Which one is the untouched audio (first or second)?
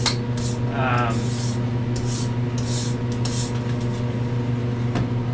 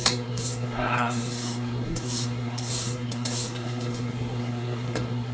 first